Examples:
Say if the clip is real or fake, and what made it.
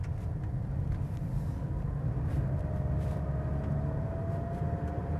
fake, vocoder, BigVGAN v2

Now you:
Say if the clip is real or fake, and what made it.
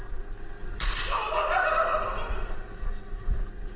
real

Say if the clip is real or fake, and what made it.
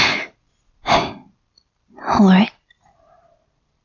real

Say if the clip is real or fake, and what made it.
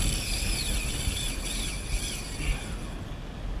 real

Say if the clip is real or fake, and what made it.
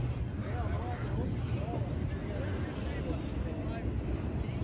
real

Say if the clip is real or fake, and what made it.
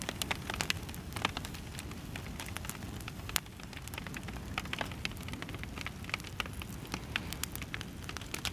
real